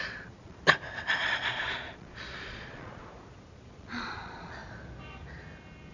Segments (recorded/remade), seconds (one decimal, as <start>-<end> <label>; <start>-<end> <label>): 0.0-0.6 remade; 0.6-1.2 recorded; 1.2-3.0 remade; 3.0-3.5 recorded; 3.5-4.6 remade; 4.6-5.9 recorded